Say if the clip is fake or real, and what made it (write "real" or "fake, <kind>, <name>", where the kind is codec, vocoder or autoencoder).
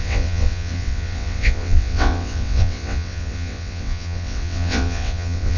fake, vocoder, WaveNeXt